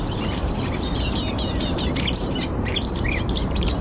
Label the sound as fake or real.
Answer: fake